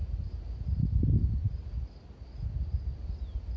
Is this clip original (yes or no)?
yes